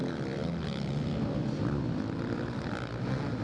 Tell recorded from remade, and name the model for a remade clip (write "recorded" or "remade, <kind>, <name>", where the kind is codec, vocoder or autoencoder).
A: recorded